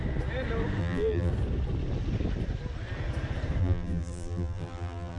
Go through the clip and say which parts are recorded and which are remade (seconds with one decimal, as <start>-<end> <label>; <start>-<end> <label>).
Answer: 0.0-0.8 recorded; 0.8-1.3 remade; 1.3-3.6 recorded; 3.6-5.2 remade